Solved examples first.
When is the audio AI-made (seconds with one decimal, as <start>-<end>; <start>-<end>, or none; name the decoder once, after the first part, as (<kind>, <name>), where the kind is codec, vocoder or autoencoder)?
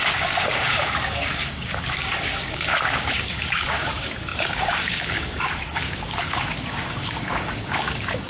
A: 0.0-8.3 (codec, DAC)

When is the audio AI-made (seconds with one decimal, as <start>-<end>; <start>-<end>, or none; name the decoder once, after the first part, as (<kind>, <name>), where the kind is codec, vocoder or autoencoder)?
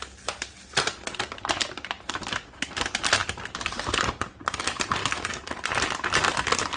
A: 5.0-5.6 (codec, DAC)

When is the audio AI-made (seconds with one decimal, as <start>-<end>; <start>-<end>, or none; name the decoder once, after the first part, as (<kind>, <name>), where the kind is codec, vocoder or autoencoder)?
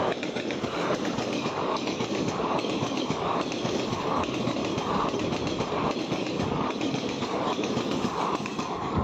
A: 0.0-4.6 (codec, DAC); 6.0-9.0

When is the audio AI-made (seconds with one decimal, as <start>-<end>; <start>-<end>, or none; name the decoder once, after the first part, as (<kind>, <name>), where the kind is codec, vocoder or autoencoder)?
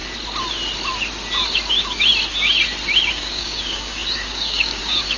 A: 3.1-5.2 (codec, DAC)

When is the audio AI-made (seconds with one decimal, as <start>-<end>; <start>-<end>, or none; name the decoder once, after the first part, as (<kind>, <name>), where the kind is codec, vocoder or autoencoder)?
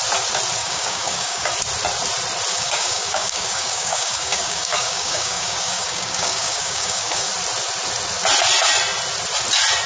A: 0.6-1.5 (codec, DAC); 2.5-7.3